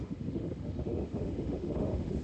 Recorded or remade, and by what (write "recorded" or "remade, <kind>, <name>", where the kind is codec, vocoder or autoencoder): remade, autoencoder, DAC-VAE